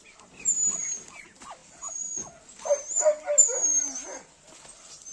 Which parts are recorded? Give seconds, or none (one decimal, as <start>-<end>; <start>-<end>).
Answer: 0.0-5.1